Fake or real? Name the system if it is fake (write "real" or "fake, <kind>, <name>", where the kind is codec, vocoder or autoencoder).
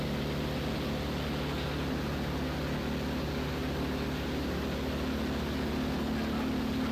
real